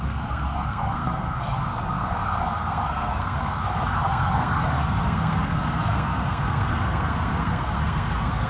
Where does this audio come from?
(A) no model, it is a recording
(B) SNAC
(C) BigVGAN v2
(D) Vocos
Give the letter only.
B